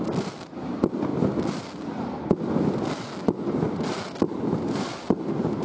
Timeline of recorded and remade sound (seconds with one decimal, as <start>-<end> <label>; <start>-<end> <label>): 0.0-5.6 recorded

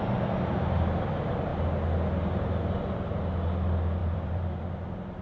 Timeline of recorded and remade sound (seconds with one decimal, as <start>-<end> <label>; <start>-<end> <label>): 0.0-4.0 recorded; 4.0-4.7 remade; 4.7-5.2 recorded

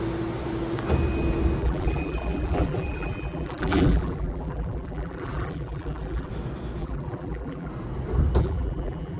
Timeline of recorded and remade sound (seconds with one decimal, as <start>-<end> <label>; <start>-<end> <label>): 0.0-1.6 recorded; 1.6-6.3 remade; 6.3-6.8 recorded; 6.8-7.7 remade; 7.7-8.4 recorded; 8.4-9.2 remade

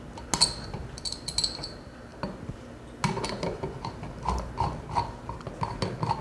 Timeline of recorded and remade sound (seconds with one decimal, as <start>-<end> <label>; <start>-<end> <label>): 0.0-6.2 recorded